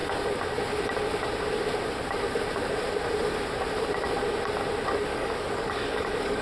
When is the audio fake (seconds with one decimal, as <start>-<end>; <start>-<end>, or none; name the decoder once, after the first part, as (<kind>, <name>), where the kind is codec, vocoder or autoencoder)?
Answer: 5.1-6.4 (codec, DAC)